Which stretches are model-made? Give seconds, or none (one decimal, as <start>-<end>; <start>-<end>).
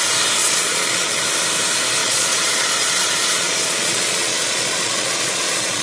0.4-1.2; 2.0-5.8